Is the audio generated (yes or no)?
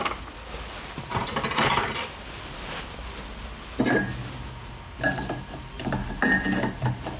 no